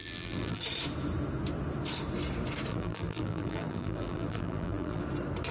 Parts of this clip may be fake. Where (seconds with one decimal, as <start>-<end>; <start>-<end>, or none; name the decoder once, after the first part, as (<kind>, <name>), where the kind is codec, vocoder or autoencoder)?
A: 0.0-0.6 (vocoder, BigVGAN v2); 2.7-5.0